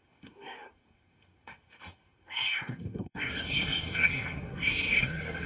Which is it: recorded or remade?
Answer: remade